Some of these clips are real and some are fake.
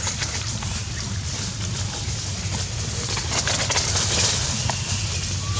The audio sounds real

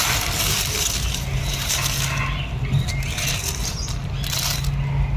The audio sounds real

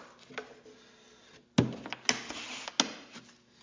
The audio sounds real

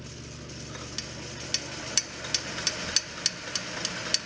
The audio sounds real